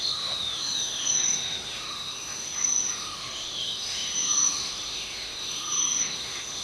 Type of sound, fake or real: fake